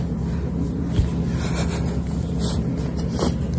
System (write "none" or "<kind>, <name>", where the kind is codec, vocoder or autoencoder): none